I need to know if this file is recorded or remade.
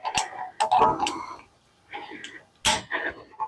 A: recorded